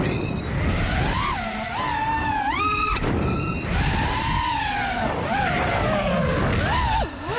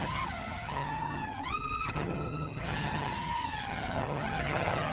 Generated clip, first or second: second